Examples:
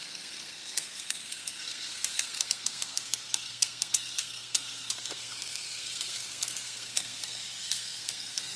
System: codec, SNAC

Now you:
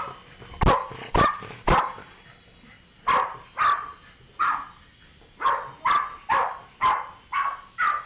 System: none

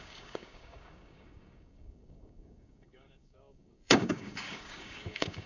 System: codec, DAC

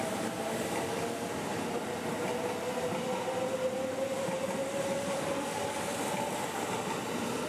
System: none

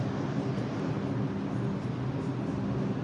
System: none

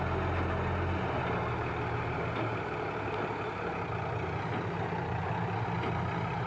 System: none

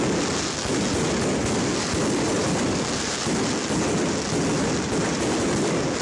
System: none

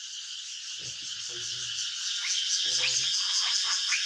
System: none